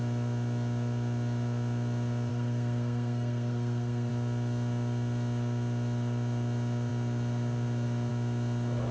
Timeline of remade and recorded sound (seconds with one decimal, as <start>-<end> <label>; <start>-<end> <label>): 0.0-2.3 recorded; 2.3-4.1 remade; 4.1-8.9 recorded